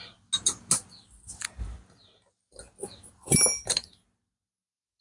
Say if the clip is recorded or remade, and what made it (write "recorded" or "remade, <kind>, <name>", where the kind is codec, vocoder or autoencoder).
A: recorded